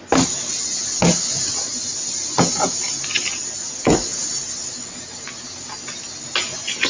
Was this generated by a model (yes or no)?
no